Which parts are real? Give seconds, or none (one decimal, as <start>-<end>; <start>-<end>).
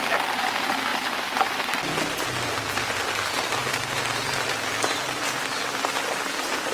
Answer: 0.0-0.9; 1.9-6.7